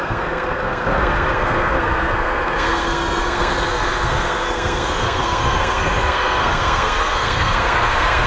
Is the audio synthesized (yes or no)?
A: yes